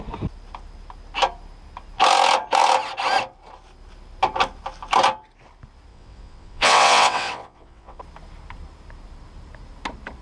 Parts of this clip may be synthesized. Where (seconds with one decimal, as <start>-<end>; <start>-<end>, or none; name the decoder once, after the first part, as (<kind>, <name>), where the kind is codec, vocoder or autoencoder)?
5.9-8.0 (vocoder, WaveNeXt)